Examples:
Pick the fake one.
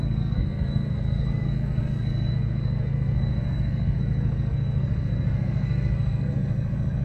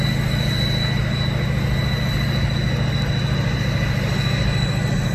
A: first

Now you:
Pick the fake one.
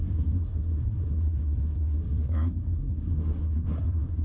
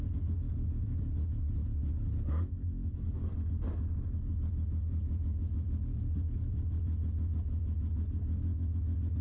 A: first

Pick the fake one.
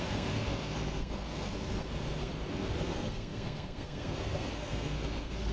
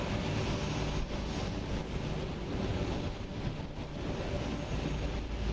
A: first